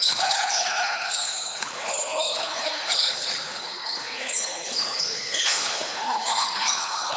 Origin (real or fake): fake